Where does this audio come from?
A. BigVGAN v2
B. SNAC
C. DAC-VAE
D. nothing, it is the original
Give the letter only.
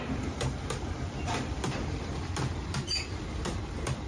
A